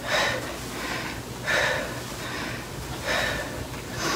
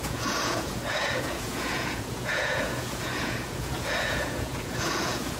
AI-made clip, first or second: second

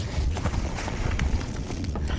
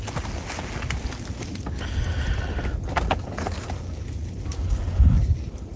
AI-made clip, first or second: first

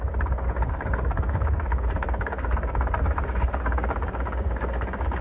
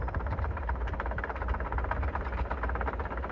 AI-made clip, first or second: first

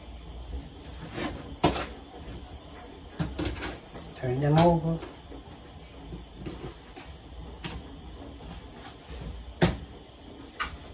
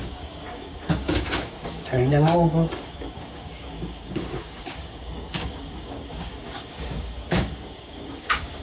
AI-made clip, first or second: second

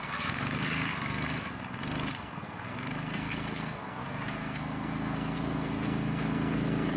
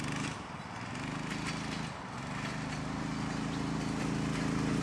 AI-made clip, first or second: first